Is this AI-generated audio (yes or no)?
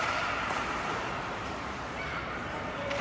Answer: yes